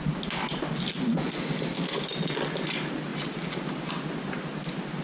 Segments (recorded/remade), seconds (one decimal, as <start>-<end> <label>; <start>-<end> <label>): 0.0-5.0 recorded